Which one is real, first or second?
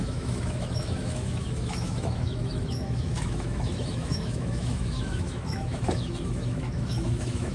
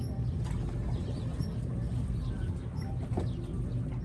second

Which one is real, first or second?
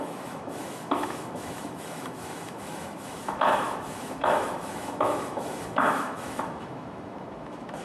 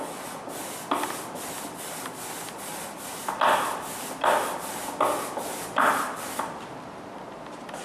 second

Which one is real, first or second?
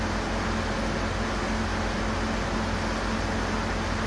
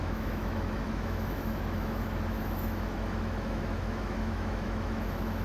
first